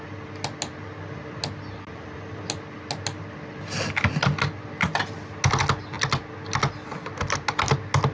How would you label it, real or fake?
real